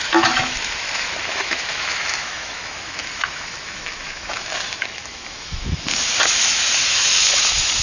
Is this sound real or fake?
fake